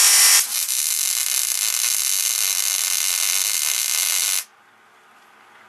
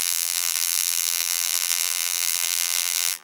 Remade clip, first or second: second